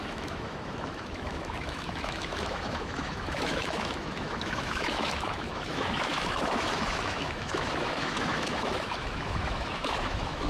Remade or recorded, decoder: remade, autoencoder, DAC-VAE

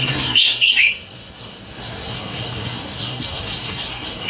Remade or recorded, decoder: remade, codec, SNAC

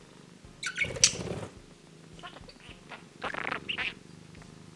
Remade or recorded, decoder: recorded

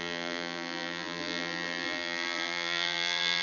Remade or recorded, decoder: remade, vocoder, BigVGAN v2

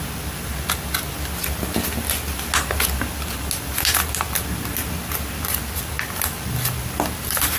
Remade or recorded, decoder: recorded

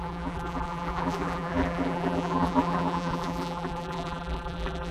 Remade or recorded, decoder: remade, vocoder, BigVGAN v2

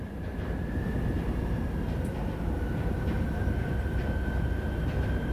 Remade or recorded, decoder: remade, vocoder, BigVGAN v2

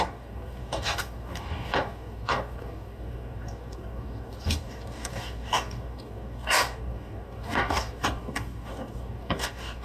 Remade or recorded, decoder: remade, codec, DAC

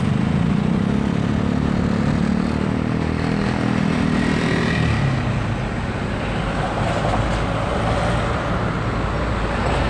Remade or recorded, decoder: recorded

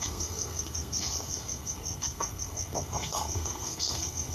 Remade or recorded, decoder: remade, codec, SNAC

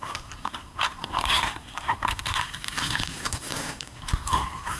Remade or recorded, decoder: remade, codec, SNAC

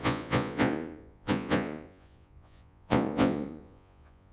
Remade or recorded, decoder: remade, vocoder, Vocos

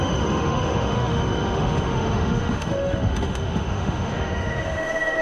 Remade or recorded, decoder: remade, autoencoder, DAC-VAE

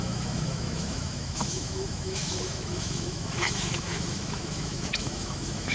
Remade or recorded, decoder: remade, autoencoder, DAC-VAE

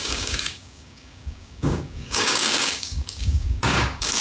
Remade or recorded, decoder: remade, codec, DAC